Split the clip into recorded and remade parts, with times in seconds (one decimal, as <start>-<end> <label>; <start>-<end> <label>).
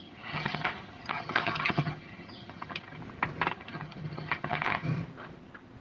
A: 0.0-3.0 remade; 3.0-3.5 recorded; 3.5-4.9 remade; 4.9-5.8 recorded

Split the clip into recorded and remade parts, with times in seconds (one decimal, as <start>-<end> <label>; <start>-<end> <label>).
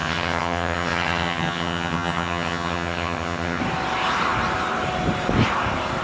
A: 0.0-3.6 remade; 3.6-6.0 recorded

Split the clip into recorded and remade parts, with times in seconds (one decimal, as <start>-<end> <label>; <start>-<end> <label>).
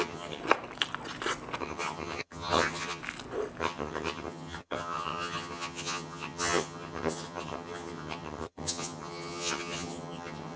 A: 0.0-0.4 remade; 0.4-1.6 recorded; 1.6-3.0 remade; 3.0-3.6 recorded; 3.6-10.6 remade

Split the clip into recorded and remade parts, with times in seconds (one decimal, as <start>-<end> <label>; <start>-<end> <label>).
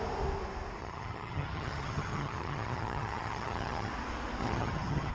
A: 0.0-0.8 recorded; 0.8-3.9 remade; 3.9-4.4 recorded; 4.4-5.1 remade